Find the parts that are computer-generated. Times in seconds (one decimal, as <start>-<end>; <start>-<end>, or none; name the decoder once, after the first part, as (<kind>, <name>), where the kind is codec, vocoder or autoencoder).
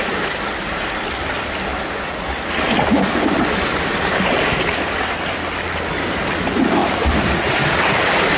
6.8-7.6 (vocoder, BigVGAN v2)